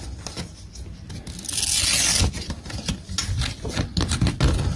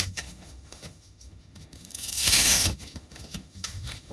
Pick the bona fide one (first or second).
first